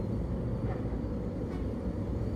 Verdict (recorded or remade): remade